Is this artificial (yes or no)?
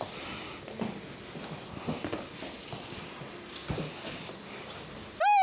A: no